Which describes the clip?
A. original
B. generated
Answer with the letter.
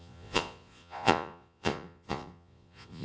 B